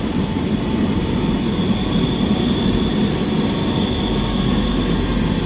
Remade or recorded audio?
recorded